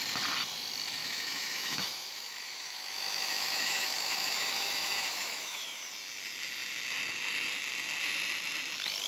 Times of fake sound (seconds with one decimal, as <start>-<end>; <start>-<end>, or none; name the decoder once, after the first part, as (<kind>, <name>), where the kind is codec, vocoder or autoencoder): 1.0-5.9 (autoencoder, DAC-VAE)